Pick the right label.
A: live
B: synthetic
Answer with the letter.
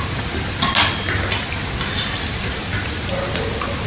A